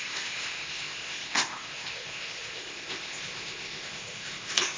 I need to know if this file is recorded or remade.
remade